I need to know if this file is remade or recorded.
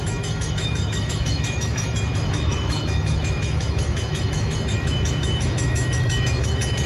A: remade